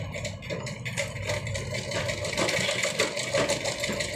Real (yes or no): yes